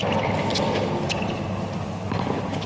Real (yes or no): yes